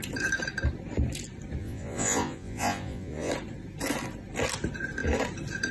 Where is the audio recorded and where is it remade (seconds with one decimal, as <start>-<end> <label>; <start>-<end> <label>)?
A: 0.0-1.6 recorded; 1.6-3.3 remade; 3.3-5.7 recorded